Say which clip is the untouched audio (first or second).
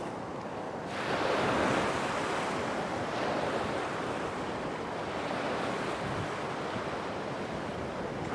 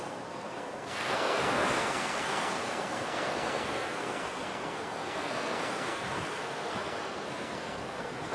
first